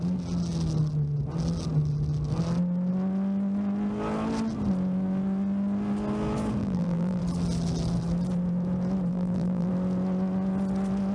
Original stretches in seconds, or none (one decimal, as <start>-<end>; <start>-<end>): 0.0-6.6; 7.2-9.1; 9.7-11.1